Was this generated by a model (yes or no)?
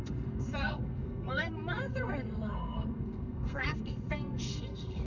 yes